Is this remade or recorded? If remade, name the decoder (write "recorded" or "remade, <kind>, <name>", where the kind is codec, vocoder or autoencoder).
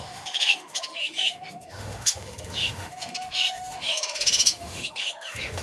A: remade, autoencoder, DAC-VAE